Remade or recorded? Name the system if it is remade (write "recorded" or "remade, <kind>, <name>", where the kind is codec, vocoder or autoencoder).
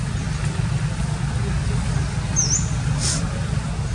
recorded